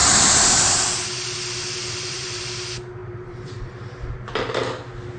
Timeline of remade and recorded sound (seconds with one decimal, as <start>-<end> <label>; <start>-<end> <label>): 0.0-2.4 remade; 2.4-3.0 recorded; 3.0-4.3 remade; 4.3-5.2 recorded